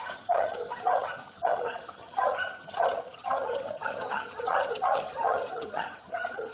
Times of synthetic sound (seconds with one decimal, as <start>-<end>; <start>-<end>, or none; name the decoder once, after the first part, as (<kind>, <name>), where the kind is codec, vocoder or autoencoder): 0.0-6.5 (vocoder, HiFi-GAN)